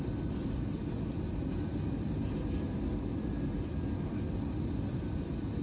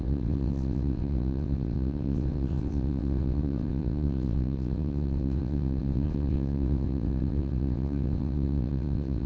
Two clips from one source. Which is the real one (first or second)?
first